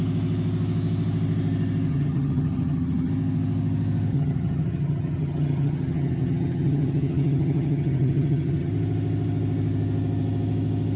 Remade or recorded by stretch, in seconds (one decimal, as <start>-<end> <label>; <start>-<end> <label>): 0.0-1.9 recorded; 1.9-3.1 remade; 3.1-4.1 recorded; 4.1-8.7 remade; 8.7-11.0 recorded